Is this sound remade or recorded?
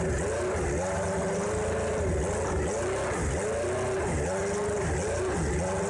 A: recorded